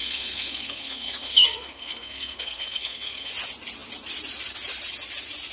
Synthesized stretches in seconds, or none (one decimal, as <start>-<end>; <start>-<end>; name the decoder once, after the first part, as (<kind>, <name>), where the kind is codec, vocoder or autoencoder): 0.0-3.3 (codec, SNAC)

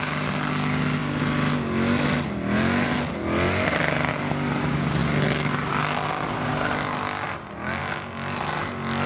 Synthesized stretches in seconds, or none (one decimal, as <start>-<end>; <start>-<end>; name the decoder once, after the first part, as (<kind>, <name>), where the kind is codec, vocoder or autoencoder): none